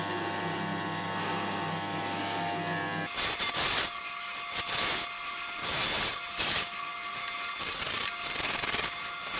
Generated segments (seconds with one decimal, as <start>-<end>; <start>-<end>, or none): none